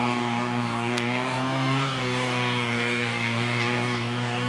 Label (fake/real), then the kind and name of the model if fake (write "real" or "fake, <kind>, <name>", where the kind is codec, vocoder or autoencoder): fake, codec, DAC